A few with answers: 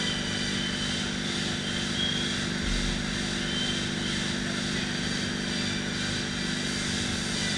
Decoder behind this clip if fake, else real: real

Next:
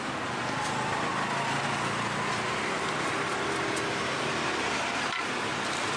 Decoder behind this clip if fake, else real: real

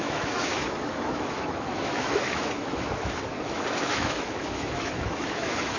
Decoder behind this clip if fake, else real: fake, autoencoder, DAC-VAE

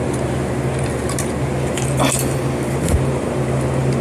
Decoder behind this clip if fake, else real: real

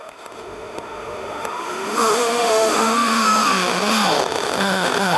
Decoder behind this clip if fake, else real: fake, autoencoder, DAC-VAE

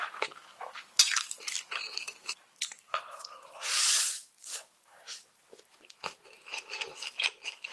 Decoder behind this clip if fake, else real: fake, autoencoder, DAC-VAE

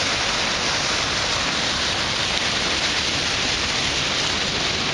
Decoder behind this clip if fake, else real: real